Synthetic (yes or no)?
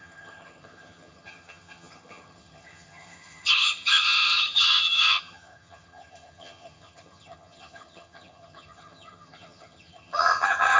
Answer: yes